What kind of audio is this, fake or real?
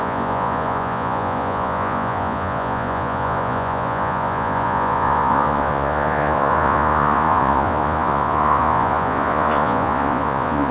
fake